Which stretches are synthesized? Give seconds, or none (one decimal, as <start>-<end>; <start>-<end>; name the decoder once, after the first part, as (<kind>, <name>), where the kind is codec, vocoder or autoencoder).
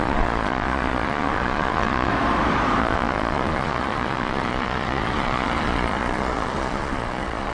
0.0-2.1 (vocoder, Vocos); 2.8-7.5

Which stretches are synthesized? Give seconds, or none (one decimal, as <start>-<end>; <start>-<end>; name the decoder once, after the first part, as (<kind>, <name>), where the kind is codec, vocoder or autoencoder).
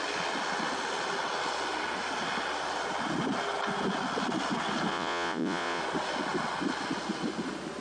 4.9-5.8 (vocoder, Vocos)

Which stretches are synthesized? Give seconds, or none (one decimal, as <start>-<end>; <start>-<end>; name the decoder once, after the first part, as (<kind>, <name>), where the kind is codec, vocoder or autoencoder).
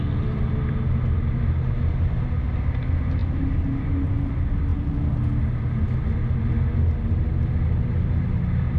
none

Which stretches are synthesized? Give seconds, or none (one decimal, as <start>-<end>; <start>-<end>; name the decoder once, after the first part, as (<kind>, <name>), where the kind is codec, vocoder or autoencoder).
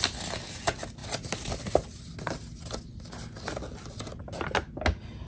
none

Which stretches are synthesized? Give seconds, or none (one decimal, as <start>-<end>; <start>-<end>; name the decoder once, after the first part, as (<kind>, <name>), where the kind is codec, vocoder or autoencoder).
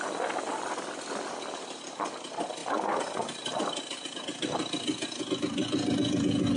none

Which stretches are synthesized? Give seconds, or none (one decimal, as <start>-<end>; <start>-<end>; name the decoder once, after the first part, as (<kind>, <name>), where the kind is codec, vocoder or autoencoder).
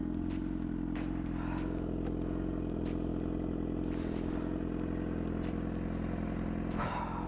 none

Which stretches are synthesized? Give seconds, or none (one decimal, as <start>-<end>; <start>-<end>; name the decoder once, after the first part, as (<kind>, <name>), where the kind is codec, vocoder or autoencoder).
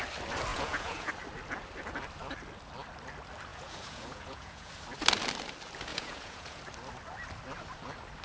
0.5-1.1 (vocoder, Vocos); 3.5-4.7; 5.9-6.6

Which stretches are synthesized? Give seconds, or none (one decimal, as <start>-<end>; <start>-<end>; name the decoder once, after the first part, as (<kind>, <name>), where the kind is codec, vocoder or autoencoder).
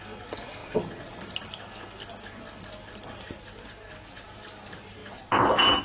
none